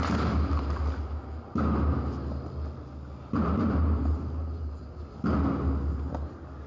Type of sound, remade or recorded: recorded